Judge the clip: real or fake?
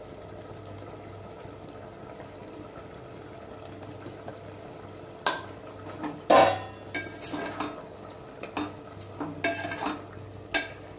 real